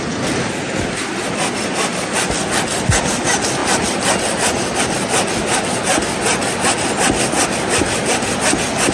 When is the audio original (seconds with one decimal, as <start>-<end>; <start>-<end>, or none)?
0.0-3.6; 4.8-8.9